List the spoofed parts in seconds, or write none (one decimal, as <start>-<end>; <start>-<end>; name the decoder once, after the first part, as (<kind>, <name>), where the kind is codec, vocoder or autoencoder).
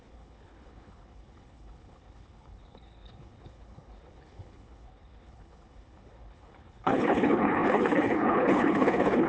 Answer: 0.0-9.3 (codec, HILCodec)